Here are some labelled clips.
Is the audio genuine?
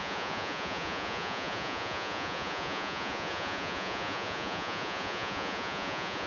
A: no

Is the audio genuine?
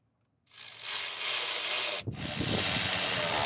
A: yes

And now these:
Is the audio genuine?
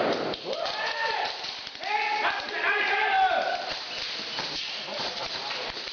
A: no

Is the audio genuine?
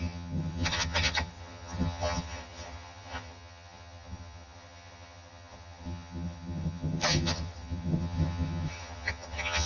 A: no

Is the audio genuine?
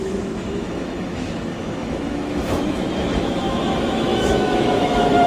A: no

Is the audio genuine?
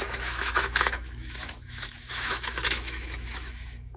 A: no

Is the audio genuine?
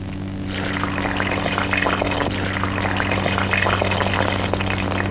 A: yes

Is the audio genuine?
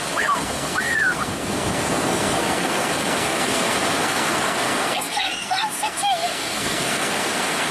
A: no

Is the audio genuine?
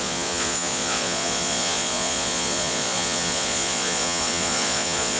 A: no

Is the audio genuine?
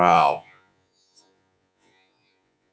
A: no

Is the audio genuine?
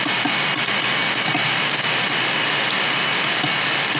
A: yes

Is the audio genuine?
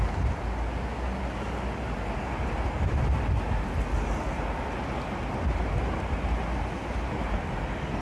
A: yes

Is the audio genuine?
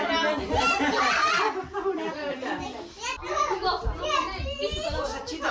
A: yes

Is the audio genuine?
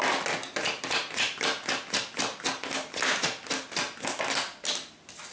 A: yes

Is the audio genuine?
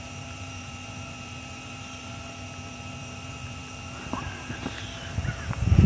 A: no